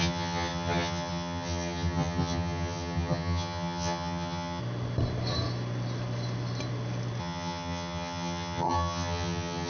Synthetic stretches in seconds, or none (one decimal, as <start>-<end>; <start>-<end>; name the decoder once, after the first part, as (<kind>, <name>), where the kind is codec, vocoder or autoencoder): 0.0-4.6 (vocoder, HiFi-GAN); 7.2-9.7

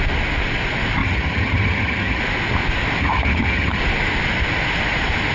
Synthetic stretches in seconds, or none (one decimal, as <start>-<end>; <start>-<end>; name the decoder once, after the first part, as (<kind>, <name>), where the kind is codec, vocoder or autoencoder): 1.0-2.2 (vocoder, HiFi-GAN); 3.0-3.8

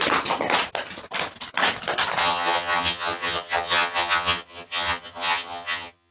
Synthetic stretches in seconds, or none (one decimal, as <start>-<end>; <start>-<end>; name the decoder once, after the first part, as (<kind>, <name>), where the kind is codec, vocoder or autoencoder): 2.2-6.1 (vocoder, HiFi-GAN)

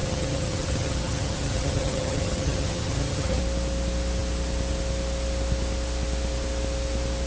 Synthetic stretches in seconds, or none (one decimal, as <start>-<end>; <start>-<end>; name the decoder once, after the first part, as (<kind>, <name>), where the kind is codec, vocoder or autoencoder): 0.0-3.4 (vocoder, HiFi-GAN)

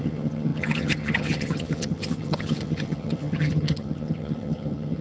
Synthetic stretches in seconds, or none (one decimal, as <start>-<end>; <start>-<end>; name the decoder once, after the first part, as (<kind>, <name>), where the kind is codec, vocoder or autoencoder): 0.0-5.0 (vocoder, HiFi-GAN)

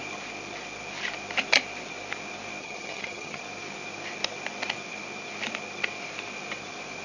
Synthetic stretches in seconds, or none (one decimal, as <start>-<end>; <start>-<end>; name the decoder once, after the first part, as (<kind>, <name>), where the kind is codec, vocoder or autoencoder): 2.6-3.4 (vocoder, HiFi-GAN)

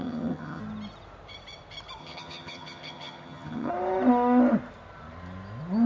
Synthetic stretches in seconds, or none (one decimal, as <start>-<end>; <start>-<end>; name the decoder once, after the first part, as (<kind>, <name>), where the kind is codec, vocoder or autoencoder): 0.0-0.6 (vocoder, HiFi-GAN); 2.0-3.7

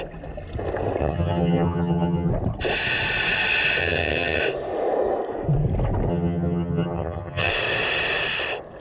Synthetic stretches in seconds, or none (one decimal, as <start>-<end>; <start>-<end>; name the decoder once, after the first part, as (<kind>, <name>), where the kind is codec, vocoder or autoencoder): 1.0-2.3 (vocoder, HiFi-GAN); 3.8-4.4; 6.1-7.5